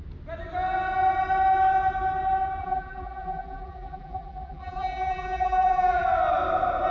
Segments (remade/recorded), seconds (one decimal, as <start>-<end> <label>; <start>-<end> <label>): 0.0-2.6 recorded; 2.6-6.0 remade; 6.0-6.9 recorded